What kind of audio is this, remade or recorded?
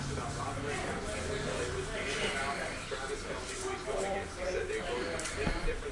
remade